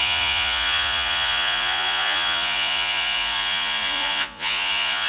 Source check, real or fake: fake